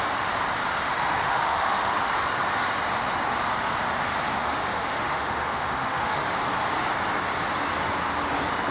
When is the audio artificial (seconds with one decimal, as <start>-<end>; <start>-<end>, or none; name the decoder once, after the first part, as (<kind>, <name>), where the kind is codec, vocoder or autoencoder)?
1.2-2.1 (autoencoder, DAC-VAE); 4.3-6.2